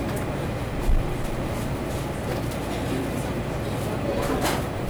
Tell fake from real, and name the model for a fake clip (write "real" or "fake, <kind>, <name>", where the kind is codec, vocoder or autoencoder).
real